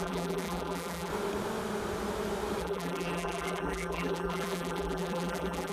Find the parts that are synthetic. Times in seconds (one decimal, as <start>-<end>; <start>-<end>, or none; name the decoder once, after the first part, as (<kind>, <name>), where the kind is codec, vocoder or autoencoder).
0.0-1.1 (vocoder, BigVGAN v2); 2.6-5.7